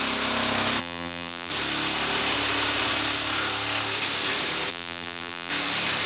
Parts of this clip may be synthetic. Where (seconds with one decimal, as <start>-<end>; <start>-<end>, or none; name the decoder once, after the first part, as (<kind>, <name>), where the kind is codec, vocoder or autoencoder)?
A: 0.8-1.5 (vocoder, BigVGAN v2); 4.7-5.5